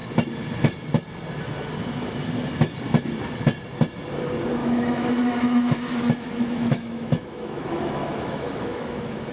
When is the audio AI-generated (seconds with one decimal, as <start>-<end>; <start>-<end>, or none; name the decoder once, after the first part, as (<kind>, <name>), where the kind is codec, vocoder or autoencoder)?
4.6-9.3 (autoencoder, DAC-VAE)